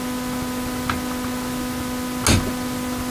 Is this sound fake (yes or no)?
no